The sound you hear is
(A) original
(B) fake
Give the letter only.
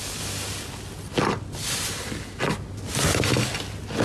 A